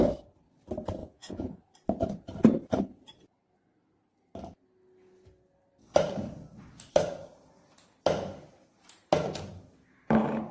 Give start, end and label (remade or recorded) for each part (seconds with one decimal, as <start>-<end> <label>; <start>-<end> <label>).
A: 0.0-1.0 recorded; 1.0-1.6 remade; 1.6-10.5 recorded